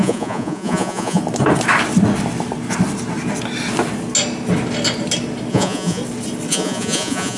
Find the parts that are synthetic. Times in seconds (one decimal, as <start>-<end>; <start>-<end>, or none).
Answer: 0.0-1.2; 5.5-6.0; 6.5-7.4